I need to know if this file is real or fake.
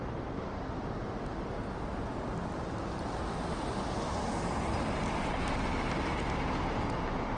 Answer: real